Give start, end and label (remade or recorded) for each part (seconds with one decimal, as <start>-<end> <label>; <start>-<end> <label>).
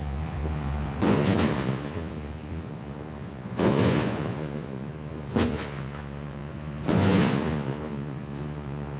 0.0-9.0 remade